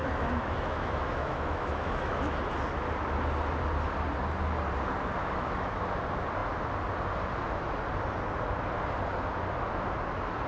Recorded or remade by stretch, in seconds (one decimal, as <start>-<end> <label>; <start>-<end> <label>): 0.0-2.4 remade; 2.4-5.2 recorded; 5.2-5.8 remade; 5.8-10.5 recorded